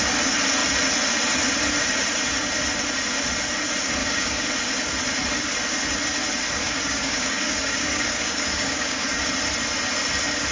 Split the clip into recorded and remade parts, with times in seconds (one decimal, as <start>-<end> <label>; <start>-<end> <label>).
0.0-4.0 recorded; 4.0-4.5 remade; 4.5-6.6 recorded; 6.6-9.3 remade; 9.3-10.5 recorded